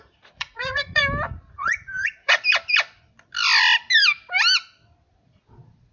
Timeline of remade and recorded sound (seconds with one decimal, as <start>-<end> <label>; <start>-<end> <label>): 0.0-1.0 remade; 1.0-1.5 recorded; 1.5-2.4 remade; 2.4-5.1 recorded; 5.1-5.9 remade